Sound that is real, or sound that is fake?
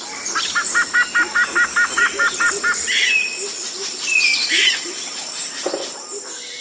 real